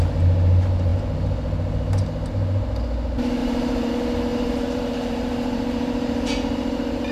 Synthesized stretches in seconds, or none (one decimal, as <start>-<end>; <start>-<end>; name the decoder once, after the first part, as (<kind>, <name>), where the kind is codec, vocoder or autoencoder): 3.4-3.9 (vocoder, BigVGAN v2); 4.3-7.1